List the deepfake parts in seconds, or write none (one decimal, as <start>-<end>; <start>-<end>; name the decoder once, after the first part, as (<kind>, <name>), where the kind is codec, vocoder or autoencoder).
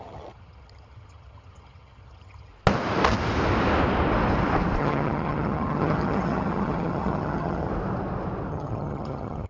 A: 0.0-2.5 (vocoder, HiFi-GAN); 4.8-7.7; 8.5-9.5